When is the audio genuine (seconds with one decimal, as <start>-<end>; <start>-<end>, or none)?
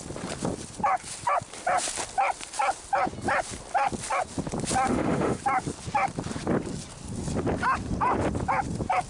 0.0-4.9; 5.4-9.1